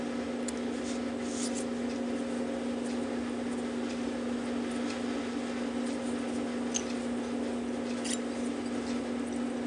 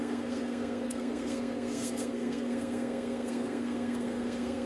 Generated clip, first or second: second